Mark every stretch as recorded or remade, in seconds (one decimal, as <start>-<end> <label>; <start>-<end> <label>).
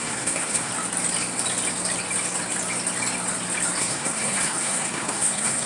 0.0-0.7 remade; 0.7-3.8 recorded; 3.8-5.7 remade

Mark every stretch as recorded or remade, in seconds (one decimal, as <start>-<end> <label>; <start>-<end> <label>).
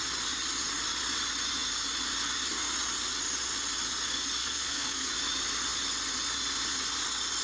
0.0-4.4 recorded; 4.4-5.1 remade; 5.1-7.4 recorded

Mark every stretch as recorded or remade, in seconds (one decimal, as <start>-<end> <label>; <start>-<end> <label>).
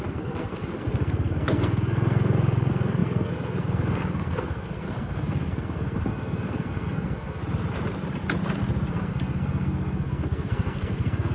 0.0-7.4 remade; 7.4-8.9 recorded; 8.9-11.3 remade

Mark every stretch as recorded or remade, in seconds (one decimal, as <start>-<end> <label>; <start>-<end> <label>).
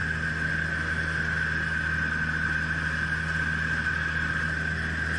0.0-5.2 recorded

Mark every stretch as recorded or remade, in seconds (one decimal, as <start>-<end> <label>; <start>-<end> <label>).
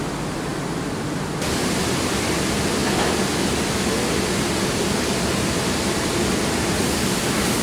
0.0-7.6 recorded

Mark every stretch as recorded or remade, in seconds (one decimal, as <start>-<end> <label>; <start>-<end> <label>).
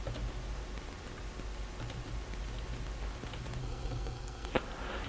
0.0-3.6 recorded; 3.6-4.5 remade; 4.5-5.1 recorded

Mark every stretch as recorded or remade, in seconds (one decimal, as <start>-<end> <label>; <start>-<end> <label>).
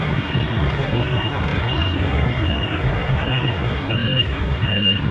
0.0-5.1 remade